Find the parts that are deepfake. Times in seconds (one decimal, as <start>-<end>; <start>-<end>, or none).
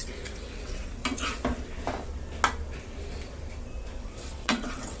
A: 0.0-1.0; 4.0-5.0